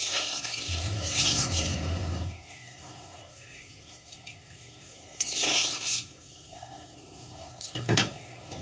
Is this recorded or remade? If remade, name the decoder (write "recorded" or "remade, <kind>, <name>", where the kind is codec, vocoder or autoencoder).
remade, codec, SNAC